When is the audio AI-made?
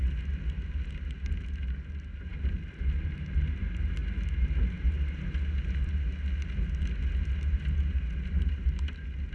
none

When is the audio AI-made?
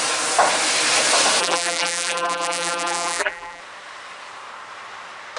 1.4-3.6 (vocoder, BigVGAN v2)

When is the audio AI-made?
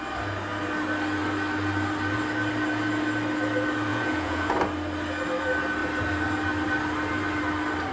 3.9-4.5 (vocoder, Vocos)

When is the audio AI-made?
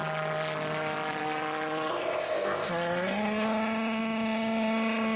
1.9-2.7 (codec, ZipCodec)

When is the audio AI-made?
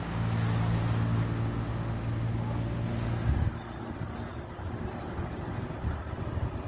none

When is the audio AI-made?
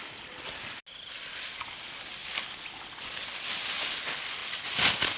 none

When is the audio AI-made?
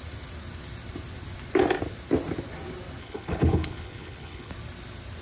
3.0-4.5 (codec, HILCodec)